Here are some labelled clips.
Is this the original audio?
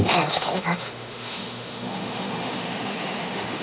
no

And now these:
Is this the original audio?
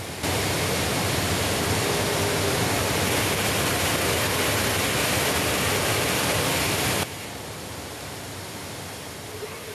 yes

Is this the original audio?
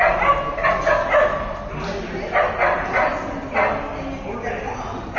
yes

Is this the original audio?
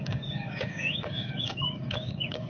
no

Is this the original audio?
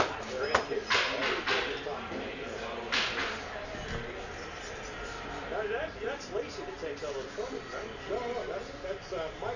yes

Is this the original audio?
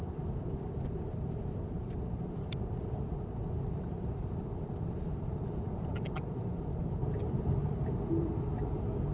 no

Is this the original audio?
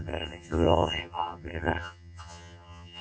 no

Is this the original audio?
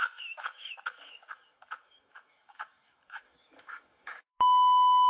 no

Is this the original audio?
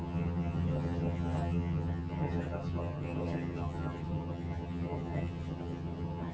no